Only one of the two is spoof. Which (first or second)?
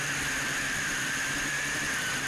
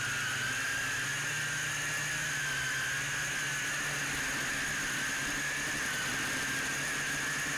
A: first